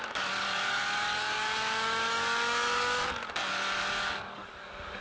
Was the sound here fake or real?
fake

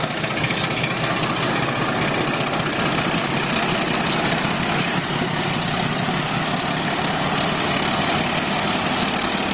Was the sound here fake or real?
real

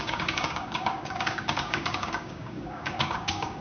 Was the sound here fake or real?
fake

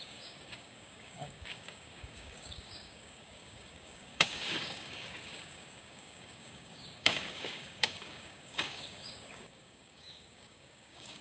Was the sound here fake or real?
fake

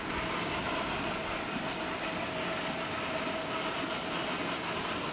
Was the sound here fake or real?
real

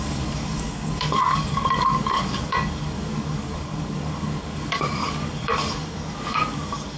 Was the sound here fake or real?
fake